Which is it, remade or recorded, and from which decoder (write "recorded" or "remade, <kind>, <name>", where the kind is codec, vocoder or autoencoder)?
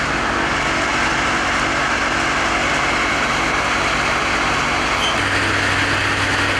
recorded